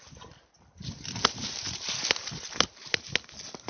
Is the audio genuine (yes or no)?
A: yes